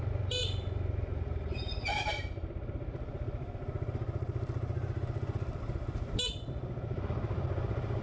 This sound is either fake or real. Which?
real